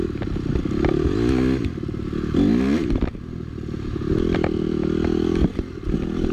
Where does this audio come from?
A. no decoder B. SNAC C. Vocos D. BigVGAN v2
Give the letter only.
A